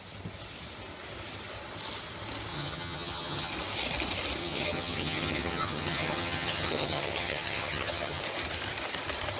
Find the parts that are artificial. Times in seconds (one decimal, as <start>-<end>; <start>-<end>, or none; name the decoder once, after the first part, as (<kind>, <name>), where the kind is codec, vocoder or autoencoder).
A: 2.5-3.5 (vocoder, HiFi-GAN); 4.4-8.2